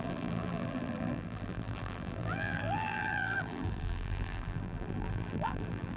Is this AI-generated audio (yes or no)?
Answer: yes